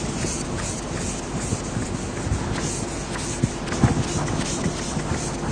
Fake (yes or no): no